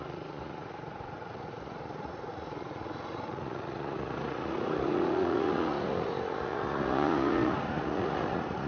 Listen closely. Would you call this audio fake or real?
fake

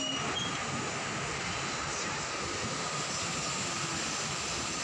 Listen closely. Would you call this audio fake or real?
real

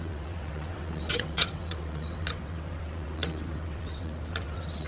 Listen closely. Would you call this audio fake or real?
fake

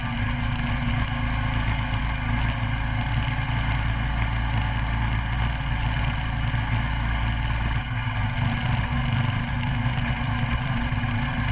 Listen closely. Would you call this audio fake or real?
real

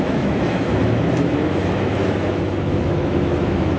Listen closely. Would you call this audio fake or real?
fake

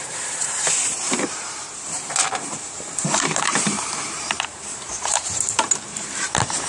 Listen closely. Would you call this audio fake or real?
fake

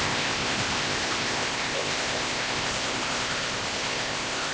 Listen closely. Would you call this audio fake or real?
fake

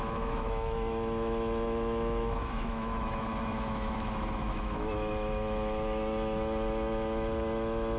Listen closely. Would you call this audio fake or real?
fake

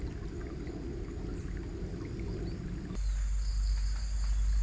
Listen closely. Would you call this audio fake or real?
real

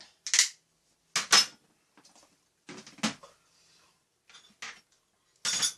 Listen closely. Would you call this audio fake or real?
real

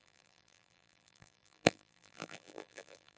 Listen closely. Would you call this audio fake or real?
fake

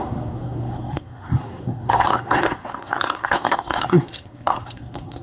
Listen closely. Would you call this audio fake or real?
fake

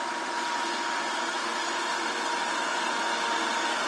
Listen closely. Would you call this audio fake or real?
real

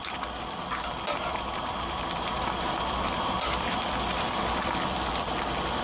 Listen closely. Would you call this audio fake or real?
fake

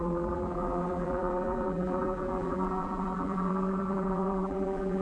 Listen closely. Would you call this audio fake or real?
fake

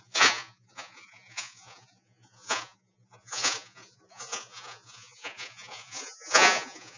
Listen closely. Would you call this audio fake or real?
fake